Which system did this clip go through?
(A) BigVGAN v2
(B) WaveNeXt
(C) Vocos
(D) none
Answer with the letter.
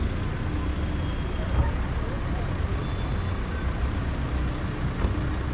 D